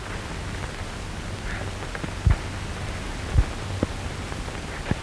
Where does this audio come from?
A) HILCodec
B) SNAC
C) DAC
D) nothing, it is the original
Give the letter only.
D